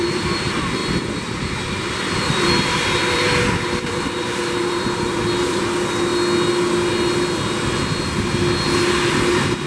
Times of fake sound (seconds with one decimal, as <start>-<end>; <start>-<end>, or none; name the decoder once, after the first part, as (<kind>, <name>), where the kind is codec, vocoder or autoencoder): 0.0-0.8 (vocoder, BigVGAN v2); 2.0-6.1; 9.1-9.7